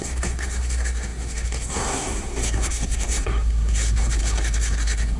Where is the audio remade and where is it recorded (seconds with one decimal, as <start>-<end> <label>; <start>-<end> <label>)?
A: 0.0-5.2 remade